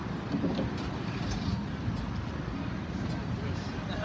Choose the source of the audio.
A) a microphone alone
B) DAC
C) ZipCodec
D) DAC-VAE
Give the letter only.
A